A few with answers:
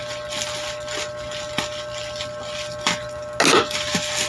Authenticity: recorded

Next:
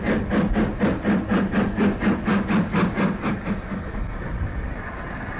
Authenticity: recorded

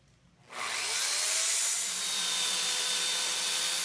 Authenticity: recorded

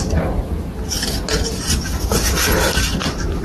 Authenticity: recorded